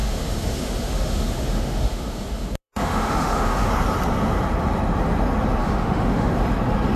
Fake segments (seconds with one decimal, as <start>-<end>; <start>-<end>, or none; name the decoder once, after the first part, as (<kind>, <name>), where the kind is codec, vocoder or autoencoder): 0.0-3.7 (autoencoder, DAC-VAE); 5.6-6.3